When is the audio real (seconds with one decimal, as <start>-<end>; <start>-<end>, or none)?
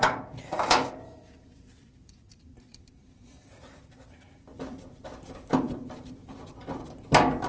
6.6-7.5